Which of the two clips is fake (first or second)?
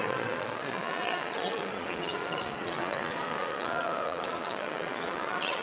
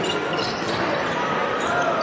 first